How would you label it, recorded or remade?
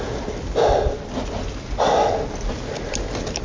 recorded